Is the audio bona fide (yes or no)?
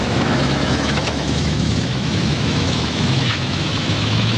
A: no